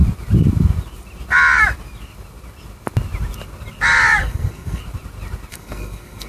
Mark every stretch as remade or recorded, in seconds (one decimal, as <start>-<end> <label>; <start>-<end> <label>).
0.0-4.2 recorded; 4.2-4.8 remade; 4.8-5.5 recorded; 5.5-6.3 remade